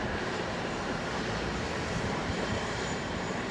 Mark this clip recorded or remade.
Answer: remade